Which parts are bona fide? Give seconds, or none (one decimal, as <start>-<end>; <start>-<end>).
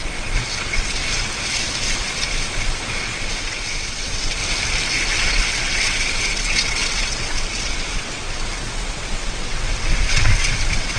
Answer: 1.0-3.0; 4.4-5.3